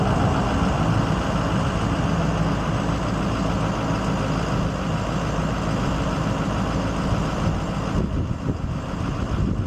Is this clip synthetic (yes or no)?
no